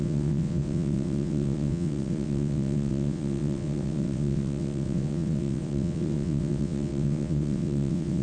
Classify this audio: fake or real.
fake